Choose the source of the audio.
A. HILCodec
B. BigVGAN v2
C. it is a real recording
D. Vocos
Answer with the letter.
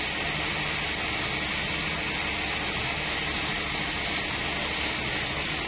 C